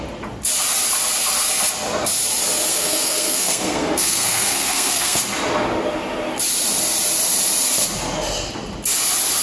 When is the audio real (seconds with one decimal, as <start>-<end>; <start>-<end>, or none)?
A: 0.0-2.7; 5.2-9.4